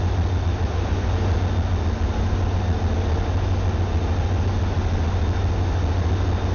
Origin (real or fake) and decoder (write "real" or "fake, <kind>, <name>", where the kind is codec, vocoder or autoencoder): real